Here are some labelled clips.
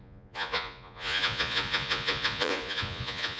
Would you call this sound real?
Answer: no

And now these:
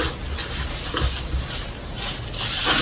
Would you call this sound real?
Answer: yes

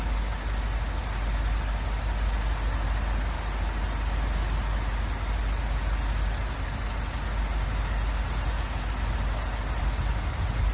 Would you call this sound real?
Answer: yes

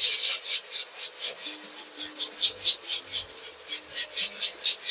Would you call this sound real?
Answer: yes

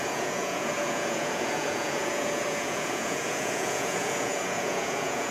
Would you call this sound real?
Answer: no